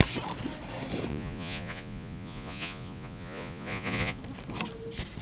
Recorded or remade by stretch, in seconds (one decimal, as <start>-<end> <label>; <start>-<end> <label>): 0.0-1.1 recorded; 1.1-4.2 remade; 4.2-5.2 recorded